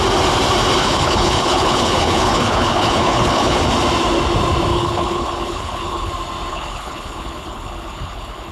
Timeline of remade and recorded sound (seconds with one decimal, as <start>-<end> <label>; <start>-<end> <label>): 0.0-0.8 recorded; 0.8-3.6 remade; 3.6-4.7 recorded; 4.7-6.1 remade; 6.1-6.5 recorded; 6.5-8.5 remade